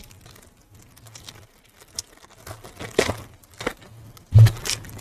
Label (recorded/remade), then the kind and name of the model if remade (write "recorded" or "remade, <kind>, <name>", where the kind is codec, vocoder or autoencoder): recorded